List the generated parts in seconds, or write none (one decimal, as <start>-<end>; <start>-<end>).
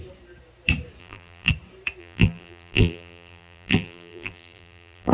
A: 1.0-1.5; 2.0-5.1